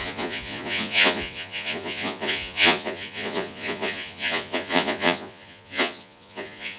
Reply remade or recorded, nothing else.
remade